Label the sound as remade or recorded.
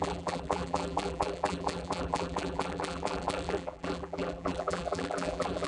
remade